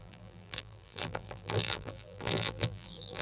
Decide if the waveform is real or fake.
fake